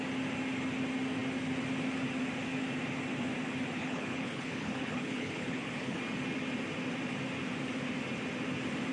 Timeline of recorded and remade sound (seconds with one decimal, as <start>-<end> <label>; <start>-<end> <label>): 0.0-3.8 recorded; 3.8-6.0 remade; 6.0-8.9 recorded